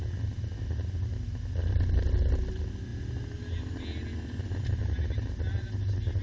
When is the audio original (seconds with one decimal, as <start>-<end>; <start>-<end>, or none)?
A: 0.0-6.2